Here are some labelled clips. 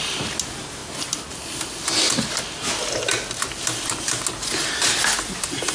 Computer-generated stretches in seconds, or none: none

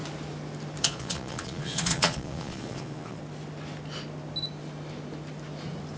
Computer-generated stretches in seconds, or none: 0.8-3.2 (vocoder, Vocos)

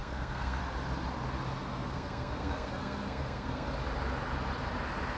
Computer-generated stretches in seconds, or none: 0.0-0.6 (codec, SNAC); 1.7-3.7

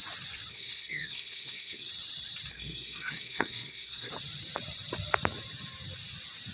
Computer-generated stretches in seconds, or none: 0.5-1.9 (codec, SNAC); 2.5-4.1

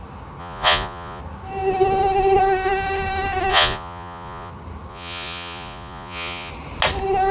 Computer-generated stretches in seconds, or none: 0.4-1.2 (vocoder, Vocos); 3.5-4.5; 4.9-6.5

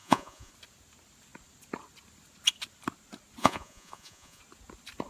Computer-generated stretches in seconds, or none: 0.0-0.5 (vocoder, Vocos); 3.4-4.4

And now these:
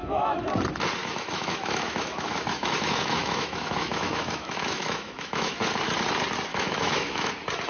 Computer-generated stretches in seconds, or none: 0.0-0.5 (autoencoder, DAC-VAE); 1.0-5.6; 6.5-7.3